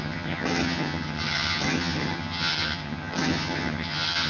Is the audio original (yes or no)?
no